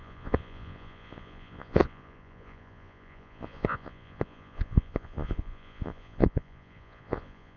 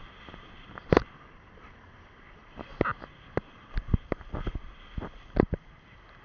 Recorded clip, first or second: second